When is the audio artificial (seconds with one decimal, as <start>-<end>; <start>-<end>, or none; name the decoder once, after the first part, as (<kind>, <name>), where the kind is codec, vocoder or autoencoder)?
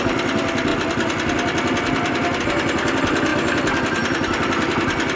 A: none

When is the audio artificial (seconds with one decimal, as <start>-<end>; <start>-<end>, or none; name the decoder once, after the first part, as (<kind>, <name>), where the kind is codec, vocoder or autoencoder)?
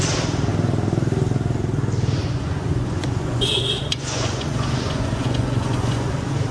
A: 2.2-6.1 (vocoder, Vocos)